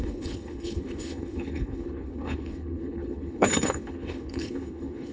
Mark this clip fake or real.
fake